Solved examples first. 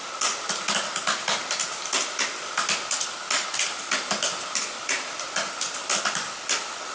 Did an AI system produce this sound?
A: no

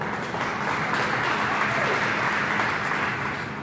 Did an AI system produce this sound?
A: no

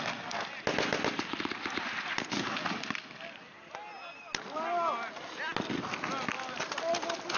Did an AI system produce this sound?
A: no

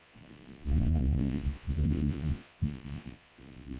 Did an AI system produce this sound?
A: yes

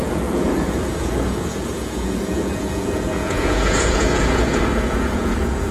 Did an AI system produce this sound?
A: yes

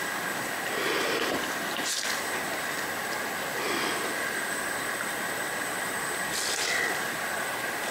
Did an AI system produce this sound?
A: no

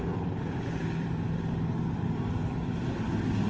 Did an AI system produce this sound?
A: no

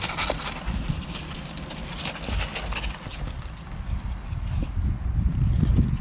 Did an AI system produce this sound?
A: no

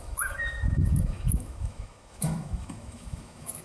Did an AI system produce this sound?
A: yes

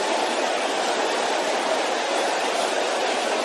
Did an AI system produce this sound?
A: no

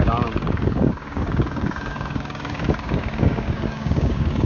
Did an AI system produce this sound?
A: yes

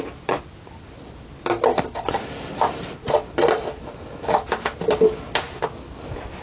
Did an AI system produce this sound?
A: no